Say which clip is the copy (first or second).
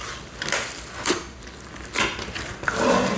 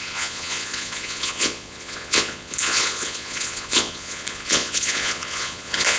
second